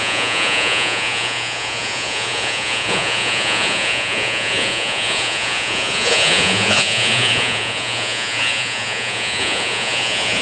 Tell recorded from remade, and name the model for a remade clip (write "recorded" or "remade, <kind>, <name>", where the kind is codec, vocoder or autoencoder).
remade, vocoder, Vocos